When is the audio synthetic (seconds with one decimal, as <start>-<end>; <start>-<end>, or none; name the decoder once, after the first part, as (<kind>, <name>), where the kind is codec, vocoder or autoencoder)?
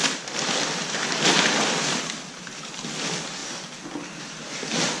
0.0-1.7 (vocoder, BigVGAN v2)